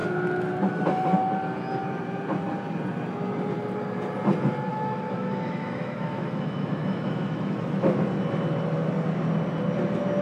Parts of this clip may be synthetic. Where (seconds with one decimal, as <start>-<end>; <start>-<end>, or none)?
4.7-8.0